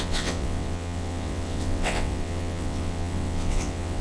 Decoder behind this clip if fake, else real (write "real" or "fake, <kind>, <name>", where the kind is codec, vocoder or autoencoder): fake, vocoder, WaveNeXt